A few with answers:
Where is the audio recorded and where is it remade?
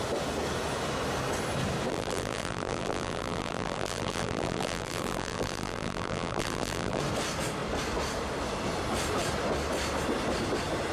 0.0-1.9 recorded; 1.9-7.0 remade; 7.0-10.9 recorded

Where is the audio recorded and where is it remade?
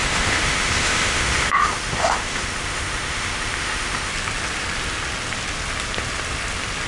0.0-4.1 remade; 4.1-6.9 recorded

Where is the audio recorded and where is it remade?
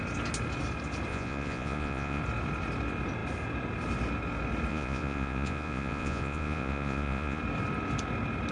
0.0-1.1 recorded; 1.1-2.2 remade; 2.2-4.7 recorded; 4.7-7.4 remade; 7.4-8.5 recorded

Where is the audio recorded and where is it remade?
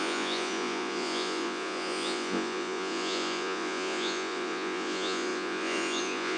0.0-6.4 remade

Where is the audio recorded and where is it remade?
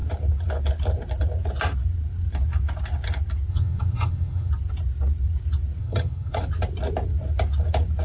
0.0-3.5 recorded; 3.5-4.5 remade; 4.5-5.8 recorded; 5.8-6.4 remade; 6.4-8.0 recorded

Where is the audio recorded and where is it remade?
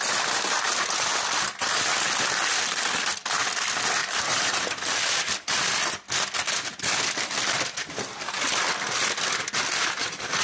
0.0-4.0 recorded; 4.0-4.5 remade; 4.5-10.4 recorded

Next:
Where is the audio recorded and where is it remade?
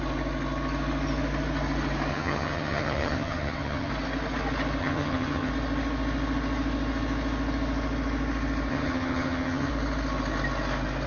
0.0-2.1 recorded; 2.1-3.9 remade; 3.9-4.8 recorded; 4.8-5.5 remade; 5.5-8.7 recorded; 8.7-9.7 remade; 9.7-11.1 recorded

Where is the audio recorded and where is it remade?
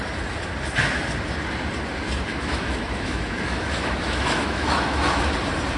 0.0-2.3 recorded; 2.3-5.2 remade; 5.2-5.8 recorded